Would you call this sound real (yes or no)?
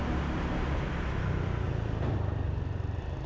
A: yes